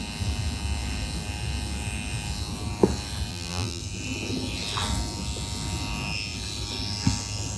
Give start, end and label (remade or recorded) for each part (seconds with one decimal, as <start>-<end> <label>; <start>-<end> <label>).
0.0-3.3 recorded; 3.3-3.8 remade; 3.8-7.6 recorded